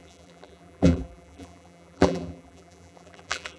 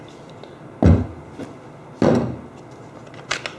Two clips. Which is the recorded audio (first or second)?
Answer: second